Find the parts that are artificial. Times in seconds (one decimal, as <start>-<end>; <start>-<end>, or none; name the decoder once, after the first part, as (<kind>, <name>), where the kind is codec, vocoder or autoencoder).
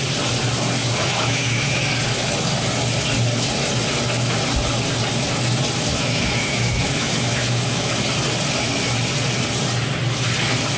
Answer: 0.8-1.8 (autoencoder, DAC-VAE); 5.9-8.0